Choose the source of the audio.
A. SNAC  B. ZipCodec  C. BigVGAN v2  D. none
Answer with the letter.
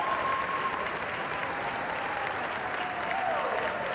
D